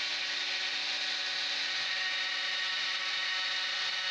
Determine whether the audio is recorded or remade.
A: recorded